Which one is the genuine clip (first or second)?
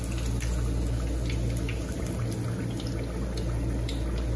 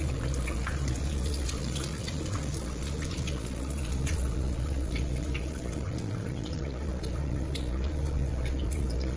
first